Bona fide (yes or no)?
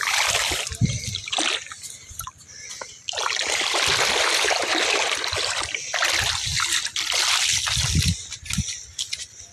yes